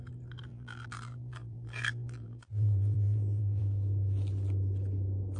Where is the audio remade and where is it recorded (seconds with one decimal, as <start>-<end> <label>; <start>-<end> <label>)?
0.0-0.5 recorded; 0.5-3.6 remade; 3.6-5.4 recorded